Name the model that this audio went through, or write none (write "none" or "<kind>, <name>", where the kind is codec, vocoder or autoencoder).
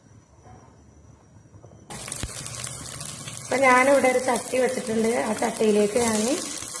none